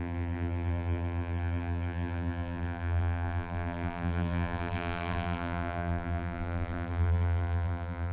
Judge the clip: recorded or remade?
remade